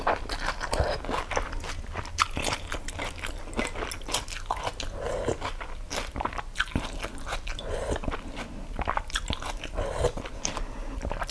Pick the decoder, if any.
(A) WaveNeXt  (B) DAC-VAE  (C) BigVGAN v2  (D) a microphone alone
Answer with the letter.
D